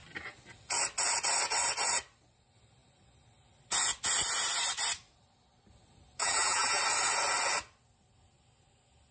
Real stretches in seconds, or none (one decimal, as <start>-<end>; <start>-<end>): 0.0-6.2; 6.8-9.1